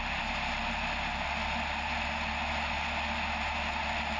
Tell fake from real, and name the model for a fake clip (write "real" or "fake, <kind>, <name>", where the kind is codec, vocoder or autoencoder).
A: real